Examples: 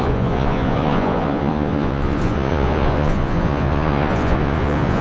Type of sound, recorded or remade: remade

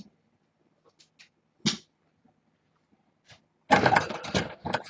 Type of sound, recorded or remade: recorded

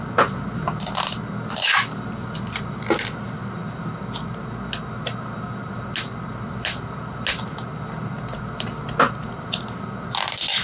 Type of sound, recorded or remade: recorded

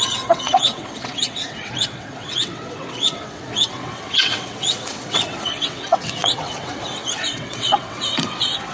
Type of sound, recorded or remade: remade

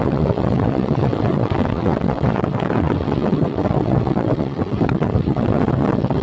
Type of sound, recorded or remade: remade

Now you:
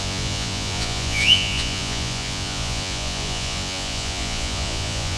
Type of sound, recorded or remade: remade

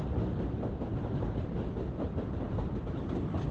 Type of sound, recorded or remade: recorded